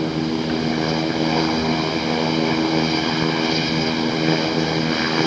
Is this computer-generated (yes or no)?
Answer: no